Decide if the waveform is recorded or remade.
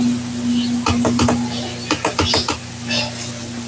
recorded